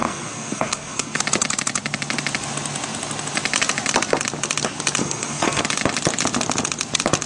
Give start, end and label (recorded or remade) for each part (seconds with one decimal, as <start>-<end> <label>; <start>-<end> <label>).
0.0-1.2 remade; 1.2-5.0 recorded; 5.0-5.6 remade; 5.6-7.3 recorded